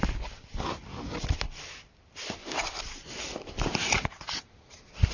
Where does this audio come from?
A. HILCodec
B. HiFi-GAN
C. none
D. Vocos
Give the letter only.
C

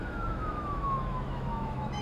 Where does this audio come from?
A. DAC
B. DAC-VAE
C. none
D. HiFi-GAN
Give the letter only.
B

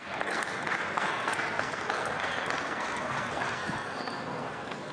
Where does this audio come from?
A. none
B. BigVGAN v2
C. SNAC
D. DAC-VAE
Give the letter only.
C